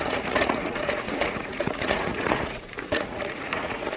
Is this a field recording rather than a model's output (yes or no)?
no